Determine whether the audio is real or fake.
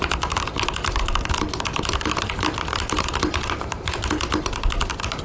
real